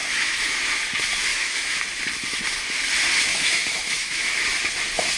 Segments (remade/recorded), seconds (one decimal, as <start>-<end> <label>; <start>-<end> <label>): 0.0-0.6 remade; 0.6-1.3 recorded; 1.3-1.8 remade; 1.8-3.3 recorded; 3.3-4.3 remade; 4.3-5.2 recorded